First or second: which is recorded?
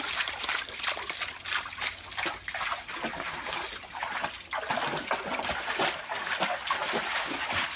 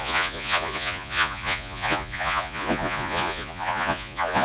first